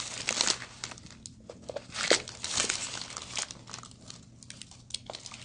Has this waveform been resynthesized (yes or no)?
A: no